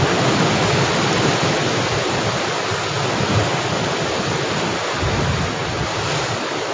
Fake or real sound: real